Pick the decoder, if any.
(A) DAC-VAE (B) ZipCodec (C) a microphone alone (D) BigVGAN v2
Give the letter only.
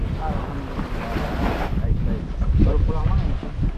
C